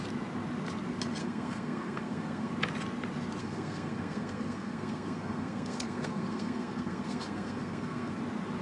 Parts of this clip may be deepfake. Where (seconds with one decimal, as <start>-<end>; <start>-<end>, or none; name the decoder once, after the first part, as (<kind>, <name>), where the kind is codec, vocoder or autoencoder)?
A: 1.2-2.5 (codec, SNAC); 3.4-8.2